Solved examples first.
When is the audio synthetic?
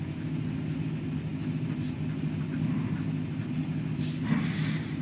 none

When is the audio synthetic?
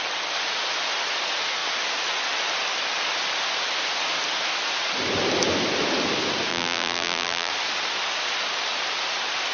6.5-7.5 (vocoder, BigVGAN v2)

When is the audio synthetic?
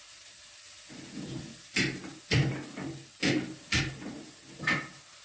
none